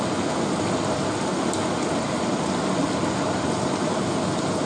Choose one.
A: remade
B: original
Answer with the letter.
B